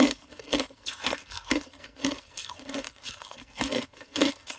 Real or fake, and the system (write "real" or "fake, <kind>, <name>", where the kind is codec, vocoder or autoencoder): fake, codec, SNAC